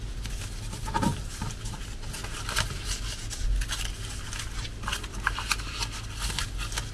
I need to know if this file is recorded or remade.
recorded